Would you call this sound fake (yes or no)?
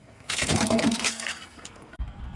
yes